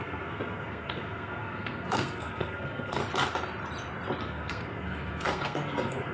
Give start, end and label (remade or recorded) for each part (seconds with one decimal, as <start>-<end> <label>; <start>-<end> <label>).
0.0-3.0 remade; 3.0-4.2 recorded; 4.2-6.1 remade